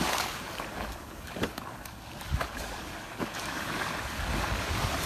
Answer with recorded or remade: remade